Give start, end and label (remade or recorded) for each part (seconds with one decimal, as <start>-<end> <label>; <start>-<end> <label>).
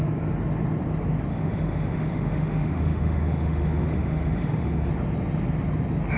0.0-1.3 recorded; 1.3-4.9 remade; 4.9-6.2 recorded